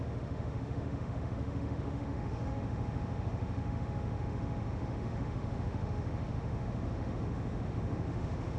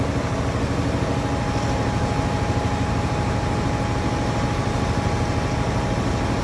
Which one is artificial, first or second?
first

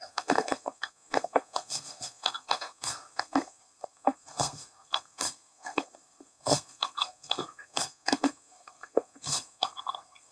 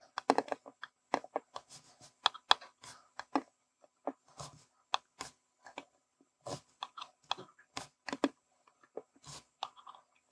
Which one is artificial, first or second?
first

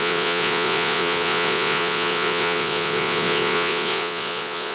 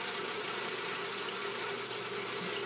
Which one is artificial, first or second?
first